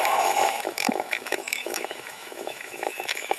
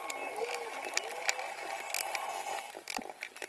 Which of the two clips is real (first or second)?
second